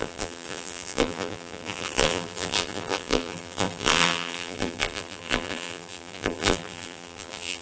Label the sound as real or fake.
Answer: fake